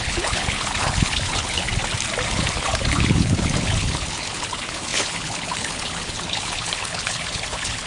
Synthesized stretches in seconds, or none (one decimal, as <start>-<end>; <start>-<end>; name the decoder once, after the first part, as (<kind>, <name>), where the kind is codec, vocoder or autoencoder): 0.0-1.7 (codec, HILCodec); 2.3-7.9